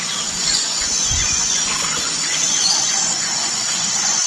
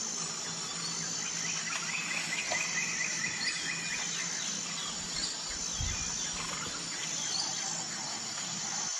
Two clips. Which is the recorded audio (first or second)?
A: second